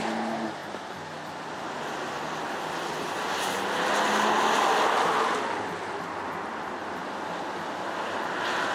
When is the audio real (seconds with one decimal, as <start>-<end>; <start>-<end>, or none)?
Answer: 0.0-8.7

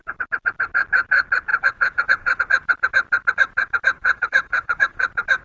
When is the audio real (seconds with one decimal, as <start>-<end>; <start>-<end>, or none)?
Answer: 0.0-1.5; 2.4-4.0; 5.0-5.4

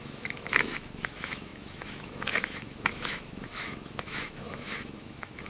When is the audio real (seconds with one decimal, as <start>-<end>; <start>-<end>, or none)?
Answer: none

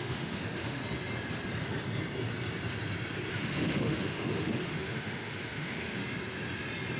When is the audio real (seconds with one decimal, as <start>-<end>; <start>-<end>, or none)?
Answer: 0.8-3.3; 6.0-7.0

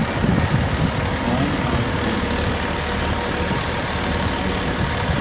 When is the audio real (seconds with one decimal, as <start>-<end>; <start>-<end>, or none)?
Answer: 0.0-5.2

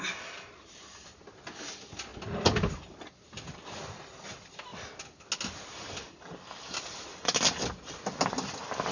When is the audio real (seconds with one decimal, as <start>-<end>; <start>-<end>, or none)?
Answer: 0.0-8.9